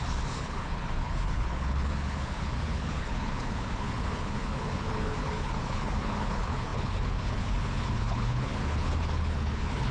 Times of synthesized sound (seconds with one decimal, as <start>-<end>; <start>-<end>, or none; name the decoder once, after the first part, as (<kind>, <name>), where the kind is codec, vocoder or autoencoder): 0.0-9.9 (codec, HILCodec)